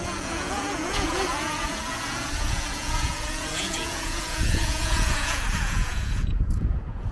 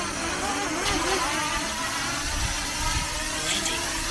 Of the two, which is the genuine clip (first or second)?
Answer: second